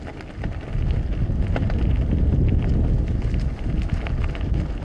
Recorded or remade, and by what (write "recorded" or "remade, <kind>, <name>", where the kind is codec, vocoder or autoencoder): recorded